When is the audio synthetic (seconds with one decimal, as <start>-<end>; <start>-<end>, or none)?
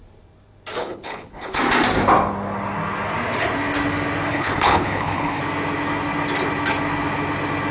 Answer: 0.8-1.6; 4.3-5.4